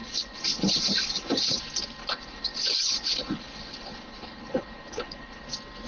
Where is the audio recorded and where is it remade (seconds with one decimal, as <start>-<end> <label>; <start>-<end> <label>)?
0.0-1.6 remade; 1.6-2.0 recorded; 2.0-5.5 remade; 5.5-5.9 recorded